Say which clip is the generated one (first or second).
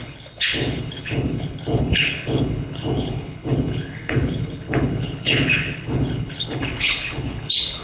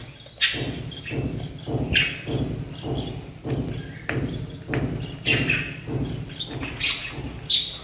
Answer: first